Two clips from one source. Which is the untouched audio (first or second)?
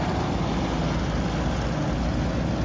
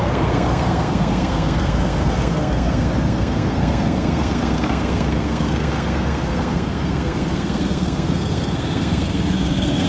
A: first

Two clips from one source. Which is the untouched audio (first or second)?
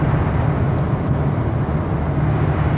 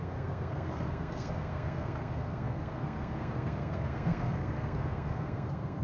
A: first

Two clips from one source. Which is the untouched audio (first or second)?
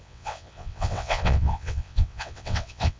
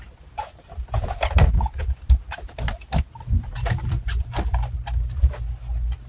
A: second